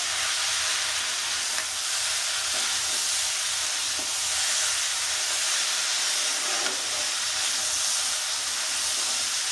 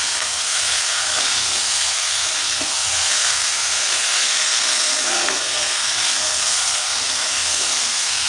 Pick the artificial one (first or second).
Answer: second